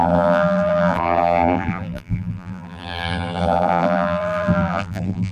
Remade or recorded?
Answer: remade